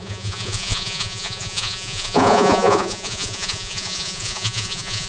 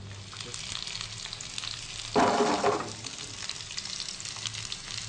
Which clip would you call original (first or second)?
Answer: second